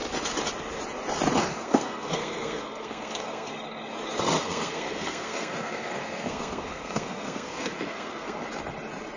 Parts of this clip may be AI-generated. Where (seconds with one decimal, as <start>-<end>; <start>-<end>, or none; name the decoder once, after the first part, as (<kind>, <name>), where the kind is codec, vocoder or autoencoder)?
1.4-3.5 (codec, SNAC); 4.4-8.4